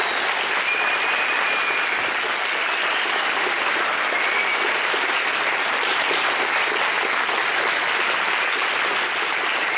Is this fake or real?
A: real